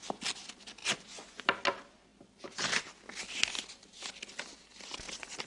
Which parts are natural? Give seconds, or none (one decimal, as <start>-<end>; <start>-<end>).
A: 0.0-0.8; 1.4-5.5